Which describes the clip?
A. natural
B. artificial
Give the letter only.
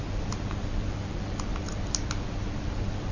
A